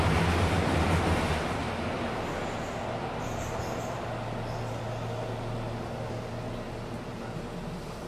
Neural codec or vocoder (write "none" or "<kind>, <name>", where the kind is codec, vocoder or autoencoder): none